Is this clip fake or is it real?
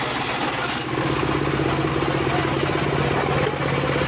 real